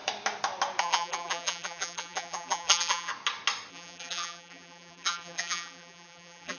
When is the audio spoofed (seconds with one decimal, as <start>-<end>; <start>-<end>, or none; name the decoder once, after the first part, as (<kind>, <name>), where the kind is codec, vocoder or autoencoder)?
0.8-3.1 (vocoder, BigVGAN v2); 3.7-6.6